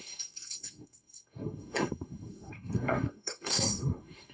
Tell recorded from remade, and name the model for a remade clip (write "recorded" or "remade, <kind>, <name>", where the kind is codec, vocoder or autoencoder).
remade, codec, SNAC